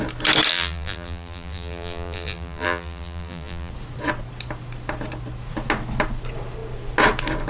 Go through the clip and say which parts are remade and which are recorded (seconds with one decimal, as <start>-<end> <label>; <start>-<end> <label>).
0.0-0.5 recorded; 0.5-3.7 remade; 3.7-7.5 recorded